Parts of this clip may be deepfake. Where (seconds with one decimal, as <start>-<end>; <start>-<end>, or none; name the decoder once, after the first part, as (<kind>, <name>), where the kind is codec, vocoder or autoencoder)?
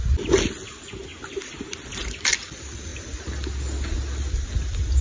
none